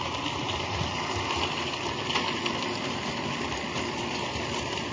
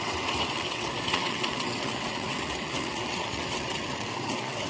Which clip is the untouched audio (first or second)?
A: first